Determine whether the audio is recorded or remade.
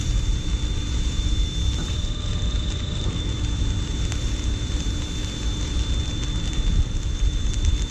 remade